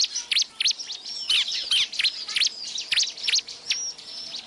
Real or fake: real